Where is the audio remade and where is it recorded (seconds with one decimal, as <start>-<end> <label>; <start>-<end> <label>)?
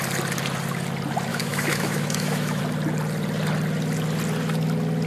0.0-1.3 recorded; 1.3-2.6 remade; 2.6-5.1 recorded